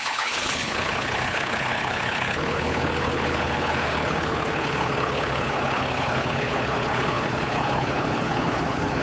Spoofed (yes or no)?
yes